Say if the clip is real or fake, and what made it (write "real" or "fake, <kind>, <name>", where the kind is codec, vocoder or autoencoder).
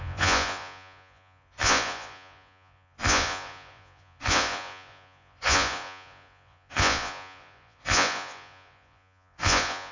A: fake, vocoder, Vocos